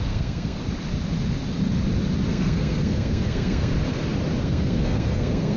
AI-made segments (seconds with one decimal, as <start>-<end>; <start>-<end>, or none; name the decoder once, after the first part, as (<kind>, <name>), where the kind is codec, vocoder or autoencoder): 0.0-0.6 (codec, SNAC); 2.3-3.7; 4.4-5.6